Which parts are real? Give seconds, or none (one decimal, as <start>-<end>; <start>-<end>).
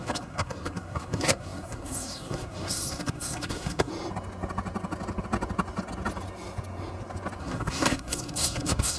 3.9-7.4